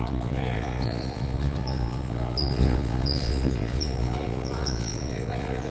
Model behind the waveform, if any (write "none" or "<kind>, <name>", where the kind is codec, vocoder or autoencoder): vocoder, Vocos